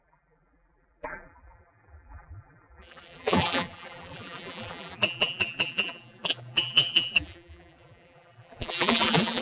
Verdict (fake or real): fake